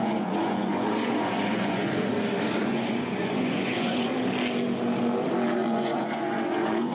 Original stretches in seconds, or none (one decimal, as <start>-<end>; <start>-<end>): 2.1-2.6; 4.1-5.5